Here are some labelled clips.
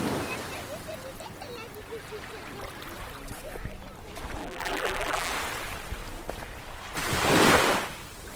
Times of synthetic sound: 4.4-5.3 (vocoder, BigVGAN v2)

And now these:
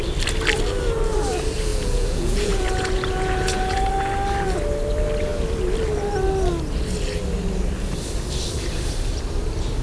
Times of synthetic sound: 1.7-3.9 (vocoder, Vocos)